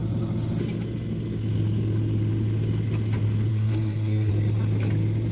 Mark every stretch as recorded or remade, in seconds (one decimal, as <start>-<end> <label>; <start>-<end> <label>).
0.0-3.5 recorded; 3.5-4.3 remade; 4.3-5.3 recorded